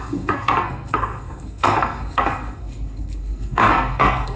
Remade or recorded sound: remade